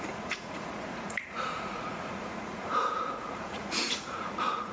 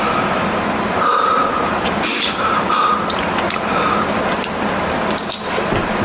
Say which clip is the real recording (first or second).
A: second